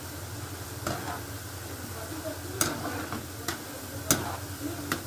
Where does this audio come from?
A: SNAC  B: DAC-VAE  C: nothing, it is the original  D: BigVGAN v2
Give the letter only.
C